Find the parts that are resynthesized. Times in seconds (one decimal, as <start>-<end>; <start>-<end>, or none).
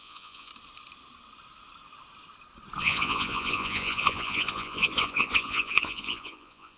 0.0-0.5; 2.8-6.8